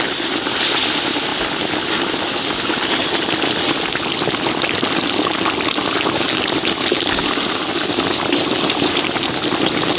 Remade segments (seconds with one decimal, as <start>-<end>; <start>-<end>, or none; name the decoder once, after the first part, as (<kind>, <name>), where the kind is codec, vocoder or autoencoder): none